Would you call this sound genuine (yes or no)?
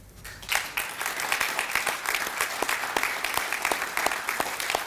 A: yes